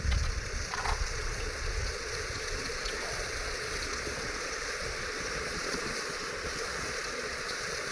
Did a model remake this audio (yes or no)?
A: yes